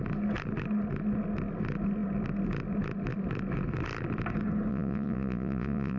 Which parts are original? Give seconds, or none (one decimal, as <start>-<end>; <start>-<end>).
0.0-4.7